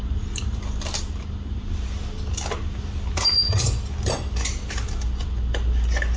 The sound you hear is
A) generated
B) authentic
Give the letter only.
B